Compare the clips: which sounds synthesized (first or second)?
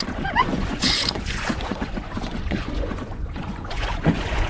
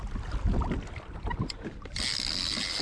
first